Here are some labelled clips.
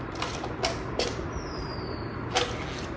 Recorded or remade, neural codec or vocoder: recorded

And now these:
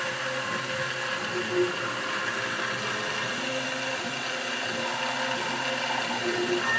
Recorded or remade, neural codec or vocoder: recorded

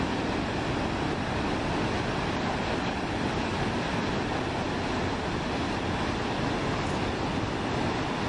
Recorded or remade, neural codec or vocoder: recorded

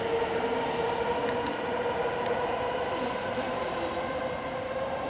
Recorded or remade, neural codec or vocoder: recorded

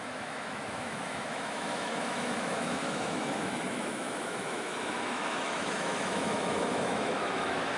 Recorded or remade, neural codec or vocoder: remade, autoencoder, DAC-VAE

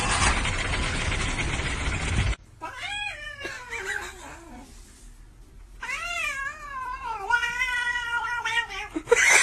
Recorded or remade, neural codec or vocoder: recorded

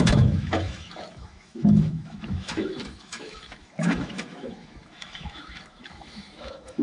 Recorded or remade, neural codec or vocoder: remade, autoencoder, DAC-VAE